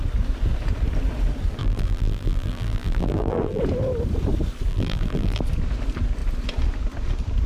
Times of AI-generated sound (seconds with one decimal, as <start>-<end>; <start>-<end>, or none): 1.6-3.6; 4.7-5.4